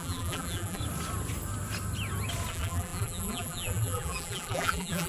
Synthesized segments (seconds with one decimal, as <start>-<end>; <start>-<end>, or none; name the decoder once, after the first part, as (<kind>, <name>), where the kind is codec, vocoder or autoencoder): 0.0-0.8 (vocoder, BigVGAN v2); 2.5-5.1